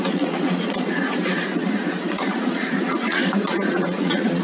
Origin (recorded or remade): remade